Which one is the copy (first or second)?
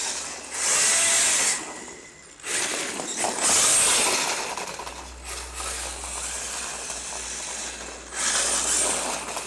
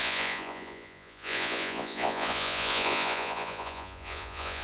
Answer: second